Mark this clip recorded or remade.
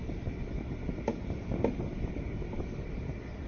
remade